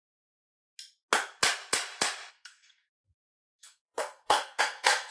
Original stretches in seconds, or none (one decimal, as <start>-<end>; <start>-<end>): 0.5-2.3